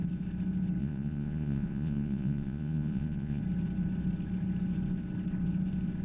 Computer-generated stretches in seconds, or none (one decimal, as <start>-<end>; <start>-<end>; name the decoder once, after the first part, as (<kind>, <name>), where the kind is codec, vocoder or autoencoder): 0.8-3.4 (vocoder, Vocos)